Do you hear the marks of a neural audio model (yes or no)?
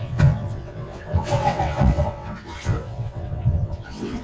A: yes